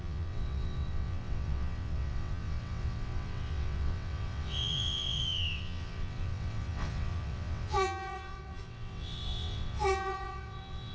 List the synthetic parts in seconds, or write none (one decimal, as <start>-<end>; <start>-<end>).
0.0-10.9